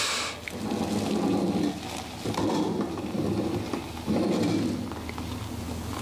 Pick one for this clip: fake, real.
real